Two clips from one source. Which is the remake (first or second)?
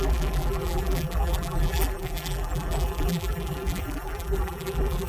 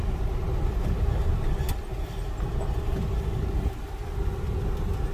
first